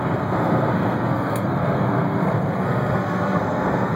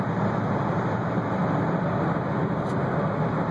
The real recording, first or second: second